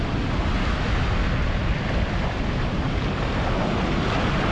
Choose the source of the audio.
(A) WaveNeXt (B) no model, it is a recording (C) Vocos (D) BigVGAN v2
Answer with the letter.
B